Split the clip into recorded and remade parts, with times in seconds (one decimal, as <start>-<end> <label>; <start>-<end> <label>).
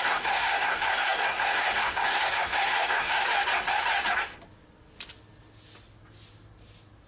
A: 0.0-3.2 remade; 3.2-7.1 recorded